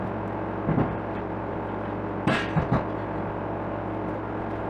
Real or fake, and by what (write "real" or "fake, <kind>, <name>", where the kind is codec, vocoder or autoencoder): real